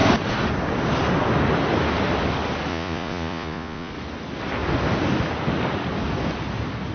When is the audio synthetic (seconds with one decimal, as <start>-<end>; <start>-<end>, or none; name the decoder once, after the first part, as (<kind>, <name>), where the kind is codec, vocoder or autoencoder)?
2.7-3.9 (vocoder, Vocos)